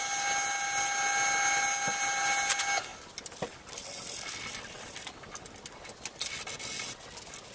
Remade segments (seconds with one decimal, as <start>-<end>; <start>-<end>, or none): none